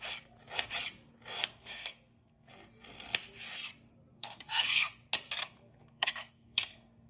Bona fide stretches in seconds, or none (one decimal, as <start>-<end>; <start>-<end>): 0.0-1.5; 2.5-4.1; 4.9-5.4